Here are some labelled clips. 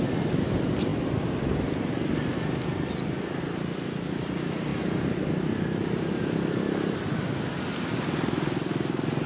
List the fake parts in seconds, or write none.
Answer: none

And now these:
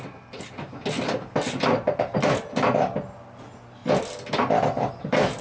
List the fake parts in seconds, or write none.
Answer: none

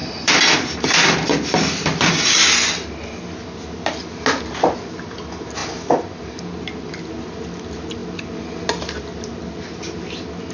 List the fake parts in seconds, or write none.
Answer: 0.0-2.1

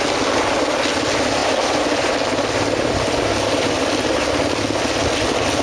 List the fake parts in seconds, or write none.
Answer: none

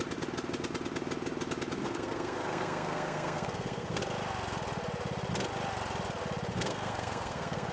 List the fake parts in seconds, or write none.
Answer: 1.8-4.0; 6.5-7.7